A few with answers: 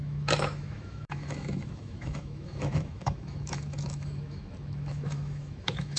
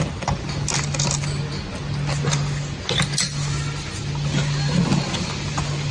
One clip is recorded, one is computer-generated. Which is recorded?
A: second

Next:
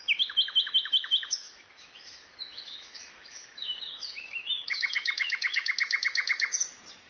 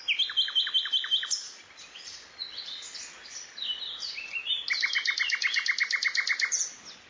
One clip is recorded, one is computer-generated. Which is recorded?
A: second